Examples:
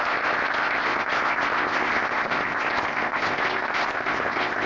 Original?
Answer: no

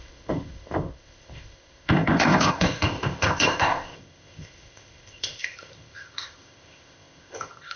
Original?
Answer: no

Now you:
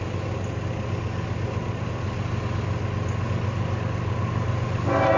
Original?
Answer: yes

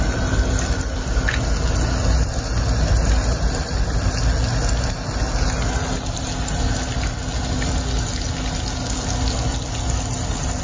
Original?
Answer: yes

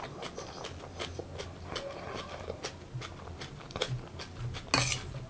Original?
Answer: yes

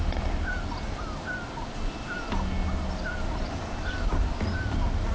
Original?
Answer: yes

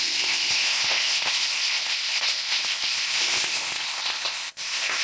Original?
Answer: no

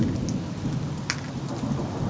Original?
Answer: yes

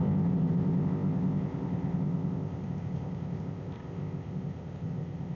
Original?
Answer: no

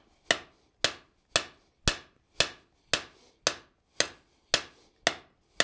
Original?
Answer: yes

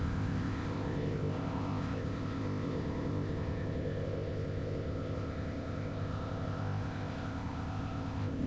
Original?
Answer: no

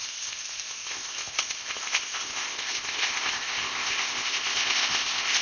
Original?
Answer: no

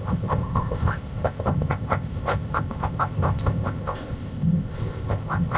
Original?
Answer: no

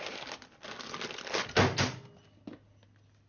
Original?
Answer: yes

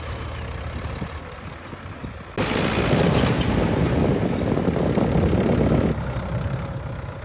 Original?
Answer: yes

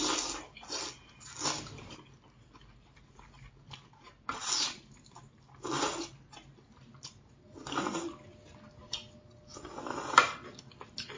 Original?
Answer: yes